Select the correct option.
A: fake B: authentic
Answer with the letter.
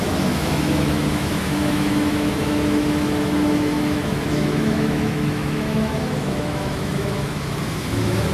A